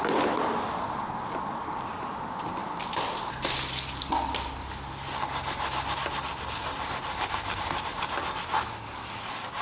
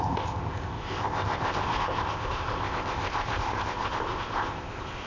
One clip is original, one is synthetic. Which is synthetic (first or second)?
second